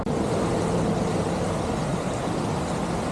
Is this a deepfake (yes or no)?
no